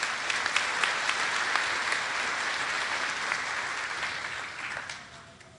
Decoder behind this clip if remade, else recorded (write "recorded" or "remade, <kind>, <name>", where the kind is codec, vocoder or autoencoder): recorded